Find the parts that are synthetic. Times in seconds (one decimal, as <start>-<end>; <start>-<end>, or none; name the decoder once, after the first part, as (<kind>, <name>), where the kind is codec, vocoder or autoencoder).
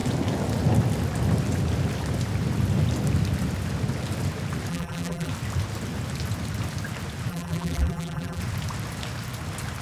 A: 4.7-5.3 (vocoder, BigVGAN v2); 7.3-8.4